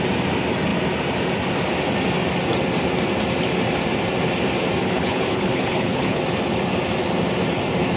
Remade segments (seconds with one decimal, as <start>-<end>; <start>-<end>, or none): 4.8-6.2